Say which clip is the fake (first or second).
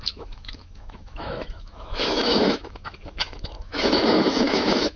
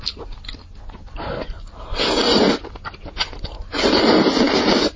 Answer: first